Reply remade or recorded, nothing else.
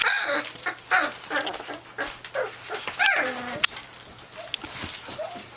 recorded